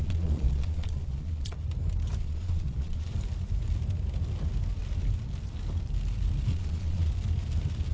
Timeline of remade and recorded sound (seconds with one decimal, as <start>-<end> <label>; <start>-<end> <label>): 0.0-1.6 remade; 1.6-2.2 recorded; 2.2-3.1 remade; 3.1-6.5 recorded; 6.5-7.1 remade; 7.1-7.9 recorded